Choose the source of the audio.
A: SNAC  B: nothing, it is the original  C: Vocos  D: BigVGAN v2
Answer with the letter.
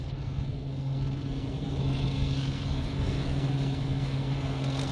A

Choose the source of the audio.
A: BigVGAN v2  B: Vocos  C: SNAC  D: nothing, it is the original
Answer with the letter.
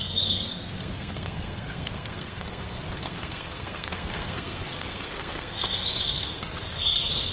C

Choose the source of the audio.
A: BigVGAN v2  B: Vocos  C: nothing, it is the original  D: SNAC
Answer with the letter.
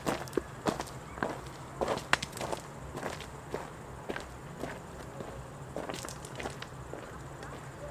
C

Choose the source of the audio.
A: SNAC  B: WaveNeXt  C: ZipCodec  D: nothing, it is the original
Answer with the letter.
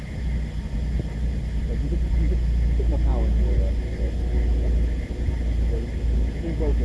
D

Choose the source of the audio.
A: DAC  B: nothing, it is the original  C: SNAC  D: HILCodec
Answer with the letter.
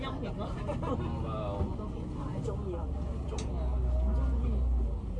B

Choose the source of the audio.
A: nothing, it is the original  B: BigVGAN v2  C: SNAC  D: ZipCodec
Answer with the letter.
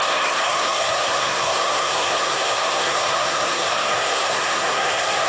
C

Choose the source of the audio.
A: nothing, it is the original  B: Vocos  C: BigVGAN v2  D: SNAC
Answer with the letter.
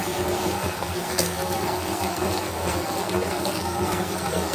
D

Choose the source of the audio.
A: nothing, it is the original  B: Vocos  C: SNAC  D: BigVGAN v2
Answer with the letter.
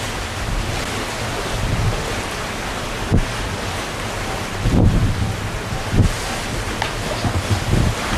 A